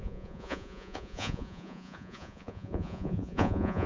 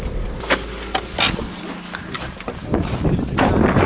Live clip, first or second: second